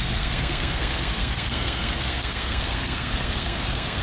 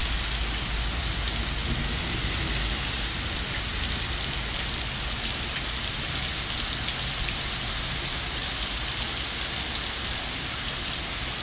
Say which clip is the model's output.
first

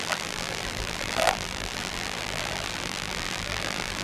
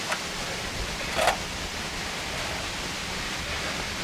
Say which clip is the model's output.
first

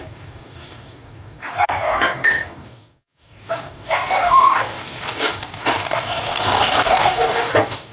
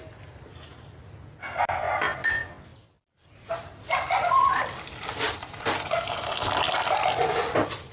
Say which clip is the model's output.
first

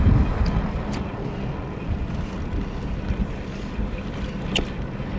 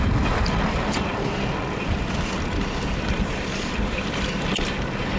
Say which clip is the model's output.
second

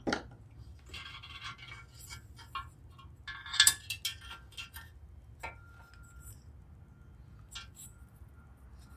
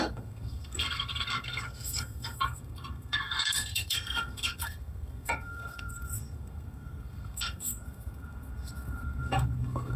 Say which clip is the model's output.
second